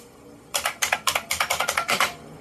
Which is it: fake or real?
real